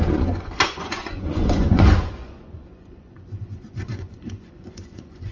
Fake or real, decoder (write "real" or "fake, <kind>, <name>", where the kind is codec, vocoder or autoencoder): fake, vocoder, Vocos